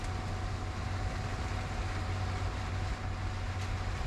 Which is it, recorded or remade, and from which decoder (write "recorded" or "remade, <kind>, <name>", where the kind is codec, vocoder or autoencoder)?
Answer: recorded